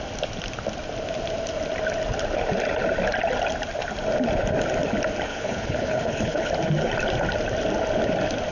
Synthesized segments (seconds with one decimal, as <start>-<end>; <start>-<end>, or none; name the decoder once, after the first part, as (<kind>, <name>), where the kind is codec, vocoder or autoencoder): 5.3-6.5 (codec, HILCodec)